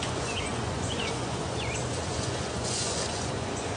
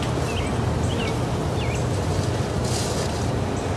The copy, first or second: first